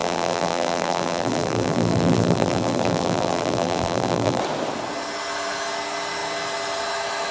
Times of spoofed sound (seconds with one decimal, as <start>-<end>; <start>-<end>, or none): 0.0-4.4